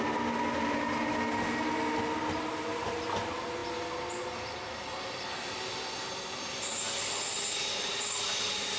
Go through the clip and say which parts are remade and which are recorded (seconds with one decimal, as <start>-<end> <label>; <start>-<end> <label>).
0.0-8.8 recorded